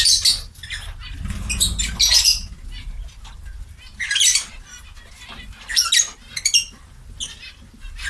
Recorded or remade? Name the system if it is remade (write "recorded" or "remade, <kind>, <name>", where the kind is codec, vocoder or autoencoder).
recorded